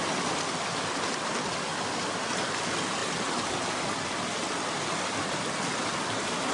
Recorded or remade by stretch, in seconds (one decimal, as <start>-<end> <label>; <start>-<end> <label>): 0.0-6.5 recorded